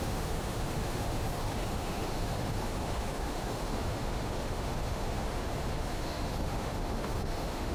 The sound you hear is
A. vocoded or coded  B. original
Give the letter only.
A